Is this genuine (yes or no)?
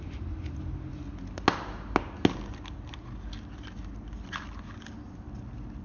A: yes